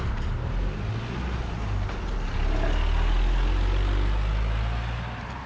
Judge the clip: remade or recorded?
recorded